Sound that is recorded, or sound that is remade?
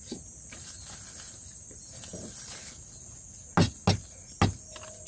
recorded